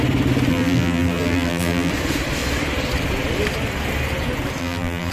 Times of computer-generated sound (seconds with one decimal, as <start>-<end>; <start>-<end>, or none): 0.5-1.9; 4.6-5.1